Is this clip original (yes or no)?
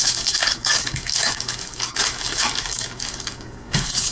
no